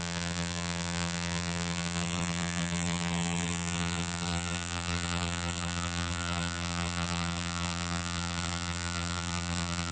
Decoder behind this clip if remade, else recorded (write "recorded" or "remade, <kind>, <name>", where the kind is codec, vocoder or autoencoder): remade, vocoder, BigVGAN v2